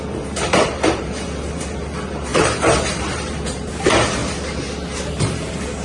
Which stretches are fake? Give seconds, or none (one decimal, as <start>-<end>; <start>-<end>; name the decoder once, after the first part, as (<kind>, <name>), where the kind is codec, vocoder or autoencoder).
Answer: 0.0-4.2 (vocoder, BigVGAN v2); 5.1-5.8